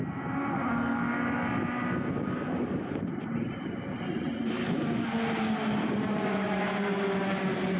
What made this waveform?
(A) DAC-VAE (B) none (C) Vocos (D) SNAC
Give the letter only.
B